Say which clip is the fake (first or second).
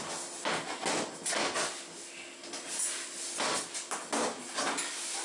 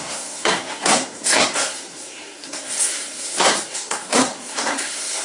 second